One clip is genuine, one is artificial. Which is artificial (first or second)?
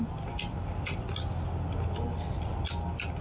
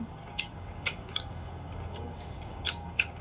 second